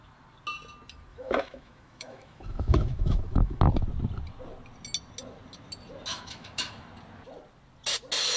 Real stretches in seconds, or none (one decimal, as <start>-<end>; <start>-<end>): 0.0-1.1; 3.6-6.1; 6.7-8.4